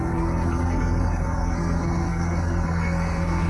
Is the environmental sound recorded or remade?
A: remade